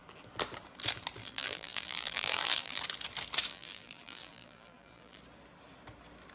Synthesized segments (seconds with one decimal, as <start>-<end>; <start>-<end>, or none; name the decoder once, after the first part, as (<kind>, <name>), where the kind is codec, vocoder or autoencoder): 1.2-2.8 (vocoder, BigVGAN v2); 3.5-5.2